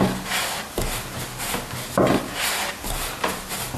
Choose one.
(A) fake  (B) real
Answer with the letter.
B